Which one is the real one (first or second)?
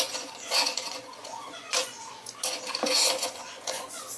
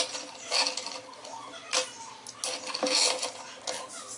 second